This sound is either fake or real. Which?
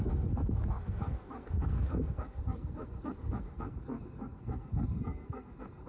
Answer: fake